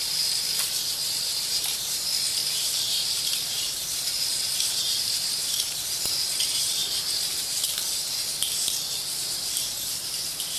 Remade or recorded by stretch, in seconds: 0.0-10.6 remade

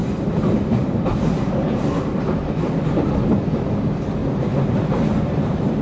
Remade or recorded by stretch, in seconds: 0.0-2.5 remade; 2.5-4.2 recorded; 4.2-5.8 remade